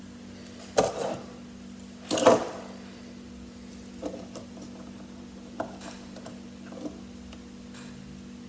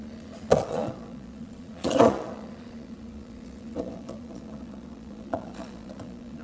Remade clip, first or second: second